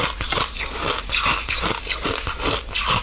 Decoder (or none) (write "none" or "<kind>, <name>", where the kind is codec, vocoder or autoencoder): none